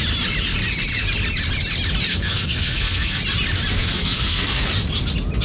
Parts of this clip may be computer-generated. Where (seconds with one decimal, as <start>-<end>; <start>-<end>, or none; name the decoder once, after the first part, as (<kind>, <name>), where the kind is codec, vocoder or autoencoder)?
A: 2.1-3.2 (codec, SNAC); 3.8-4.6